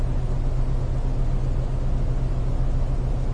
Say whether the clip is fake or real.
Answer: real